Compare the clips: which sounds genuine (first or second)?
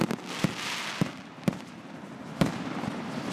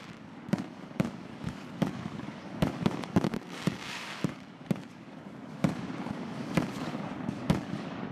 first